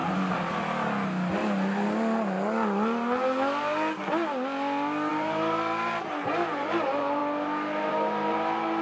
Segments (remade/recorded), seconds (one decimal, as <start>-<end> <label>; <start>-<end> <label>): 0.0-5.1 recorded; 5.1-7.2 remade; 7.2-7.9 recorded; 7.9-8.8 remade